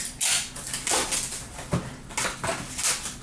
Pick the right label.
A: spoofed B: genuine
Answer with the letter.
B